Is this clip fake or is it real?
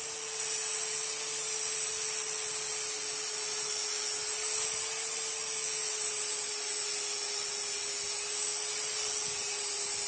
real